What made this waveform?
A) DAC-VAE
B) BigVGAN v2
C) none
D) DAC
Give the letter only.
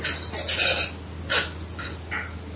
C